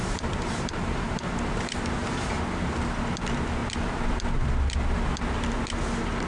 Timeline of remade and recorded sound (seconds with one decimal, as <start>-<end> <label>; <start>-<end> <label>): 0.0-2.4 remade; 2.4-6.3 recorded